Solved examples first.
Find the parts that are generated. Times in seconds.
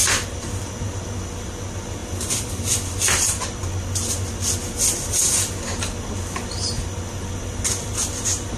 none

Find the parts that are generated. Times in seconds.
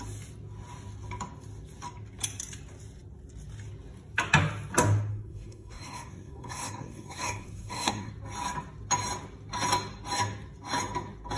5.1-8.1 (codec, SNAC)